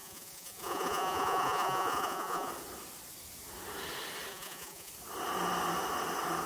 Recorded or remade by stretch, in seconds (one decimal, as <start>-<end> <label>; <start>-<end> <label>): 0.0-2.5 remade; 2.5-4.3 recorded; 4.3-4.9 remade; 4.9-6.5 recorded